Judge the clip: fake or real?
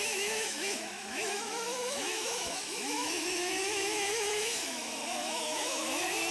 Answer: fake